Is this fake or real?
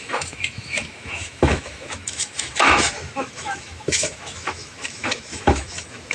fake